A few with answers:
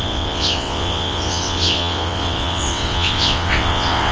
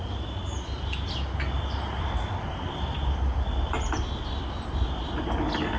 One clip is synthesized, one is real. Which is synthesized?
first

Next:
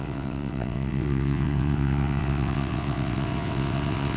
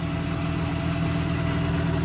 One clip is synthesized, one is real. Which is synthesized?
first